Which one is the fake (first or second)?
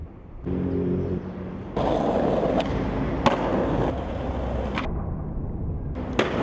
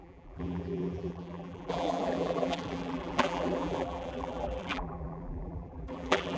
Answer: second